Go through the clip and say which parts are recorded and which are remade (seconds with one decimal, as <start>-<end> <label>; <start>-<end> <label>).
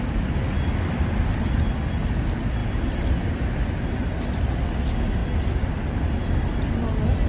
0.0-7.3 recorded